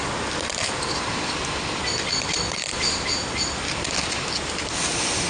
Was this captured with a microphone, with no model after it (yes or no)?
yes